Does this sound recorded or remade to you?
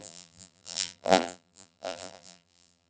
remade